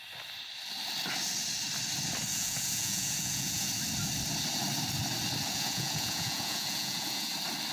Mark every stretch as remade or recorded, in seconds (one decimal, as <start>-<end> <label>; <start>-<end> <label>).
0.0-2.3 recorded; 2.3-3.7 remade; 3.7-5.5 recorded; 5.5-7.3 remade; 7.3-7.7 recorded